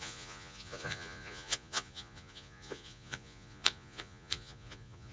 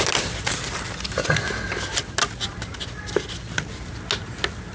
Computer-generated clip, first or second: first